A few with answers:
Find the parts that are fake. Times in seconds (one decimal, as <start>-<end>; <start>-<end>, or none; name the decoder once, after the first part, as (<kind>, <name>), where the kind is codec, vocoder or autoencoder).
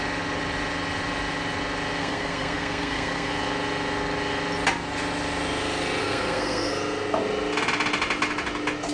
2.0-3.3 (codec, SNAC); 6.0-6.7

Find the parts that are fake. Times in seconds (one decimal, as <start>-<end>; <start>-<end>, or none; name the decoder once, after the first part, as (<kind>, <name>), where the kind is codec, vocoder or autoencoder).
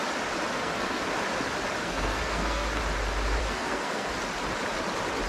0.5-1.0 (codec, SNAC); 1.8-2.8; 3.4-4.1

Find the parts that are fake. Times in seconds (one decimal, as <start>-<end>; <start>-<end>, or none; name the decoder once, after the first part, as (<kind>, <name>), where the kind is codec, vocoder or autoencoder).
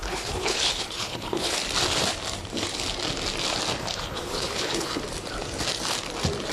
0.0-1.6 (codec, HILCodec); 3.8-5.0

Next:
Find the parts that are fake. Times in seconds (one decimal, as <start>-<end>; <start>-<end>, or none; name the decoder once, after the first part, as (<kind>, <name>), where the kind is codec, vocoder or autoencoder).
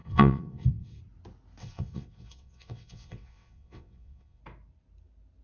0.0-1.0 (vocoder, WaveNeXt); 1.6-4.4